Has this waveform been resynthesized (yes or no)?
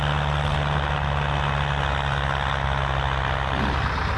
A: no